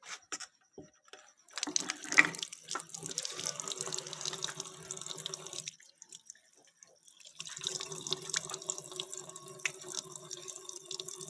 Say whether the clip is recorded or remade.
recorded